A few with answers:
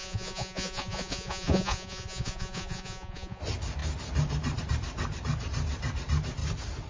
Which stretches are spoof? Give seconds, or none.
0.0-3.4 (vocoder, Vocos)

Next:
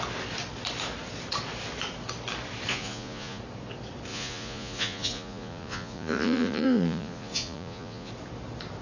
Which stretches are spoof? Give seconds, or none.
2.7-3.4 (vocoder, Vocos); 4.1-8.1

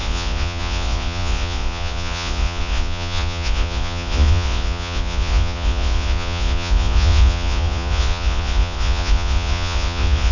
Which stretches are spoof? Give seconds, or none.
0.0-10.3 (vocoder, Vocos)

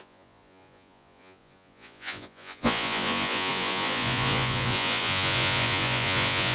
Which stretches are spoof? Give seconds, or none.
0.0-6.5 (vocoder, Vocos)

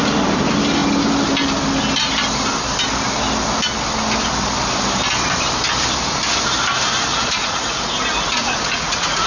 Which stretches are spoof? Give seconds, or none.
7.1-7.8 (vocoder, Vocos); 8.4-9.3

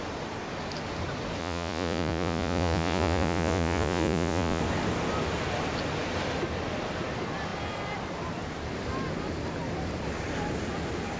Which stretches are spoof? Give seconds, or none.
1.4-4.6 (vocoder, Vocos)